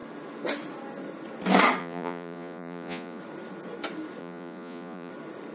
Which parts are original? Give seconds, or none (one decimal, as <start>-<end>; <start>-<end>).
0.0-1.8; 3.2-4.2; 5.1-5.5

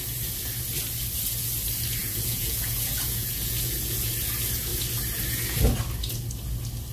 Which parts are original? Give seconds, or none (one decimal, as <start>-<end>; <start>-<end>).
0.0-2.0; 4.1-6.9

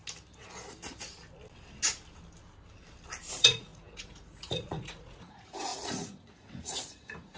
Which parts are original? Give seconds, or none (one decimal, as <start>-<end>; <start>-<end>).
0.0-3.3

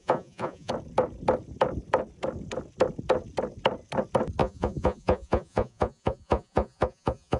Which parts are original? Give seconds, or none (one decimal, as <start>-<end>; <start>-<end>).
0.7-4.4